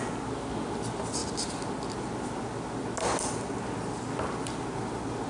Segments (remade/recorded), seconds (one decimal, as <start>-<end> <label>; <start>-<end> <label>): 0.0-5.3 recorded